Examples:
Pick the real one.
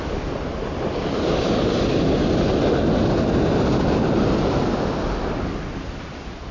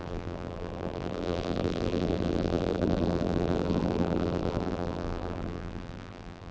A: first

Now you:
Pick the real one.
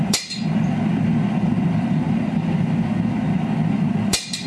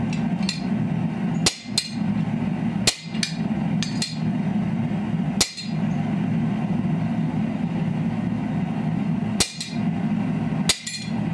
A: second